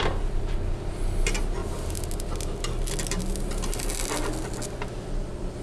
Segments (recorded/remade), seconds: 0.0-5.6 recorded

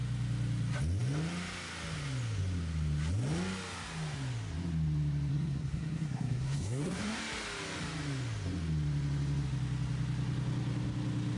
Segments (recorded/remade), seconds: 0.0-5.3 recorded; 5.3-7.2 remade; 7.2-11.4 recorded

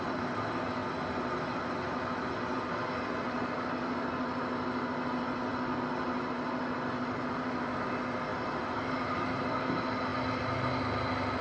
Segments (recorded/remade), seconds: 0.0-11.4 recorded

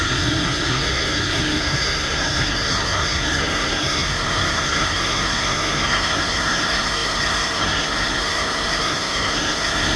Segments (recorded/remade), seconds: 0.0-10.0 remade

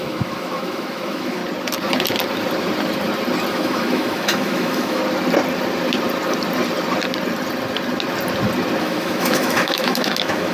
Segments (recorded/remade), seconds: 0.0-1.4 remade; 1.4-3.5 recorded; 3.5-5.0 remade; 5.0-8.8 recorded; 8.8-10.5 remade

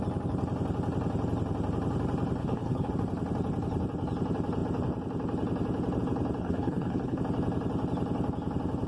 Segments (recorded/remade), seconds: 0.0-2.4 recorded; 2.4-2.9 remade; 2.9-6.4 recorded; 6.4-7.2 remade; 7.2-8.9 recorded

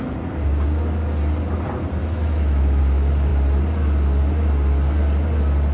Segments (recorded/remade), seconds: 0.0-2.0 recorded; 2.0-2.8 remade; 2.8-5.7 recorded

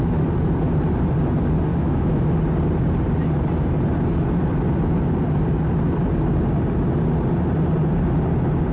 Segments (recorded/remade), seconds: 0.0-1.7 recorded; 1.7-2.3 remade; 2.3-8.7 recorded